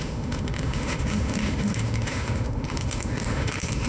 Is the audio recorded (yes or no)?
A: no